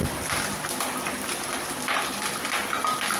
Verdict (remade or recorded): recorded